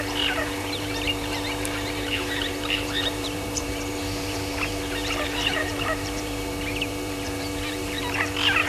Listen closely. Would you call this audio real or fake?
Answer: fake